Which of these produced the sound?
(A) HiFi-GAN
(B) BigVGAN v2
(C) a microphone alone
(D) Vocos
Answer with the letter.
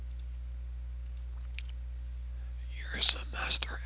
C